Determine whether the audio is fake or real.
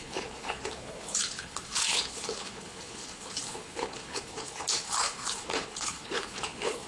fake